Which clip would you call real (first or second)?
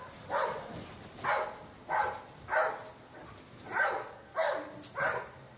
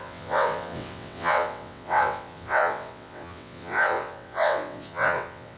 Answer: first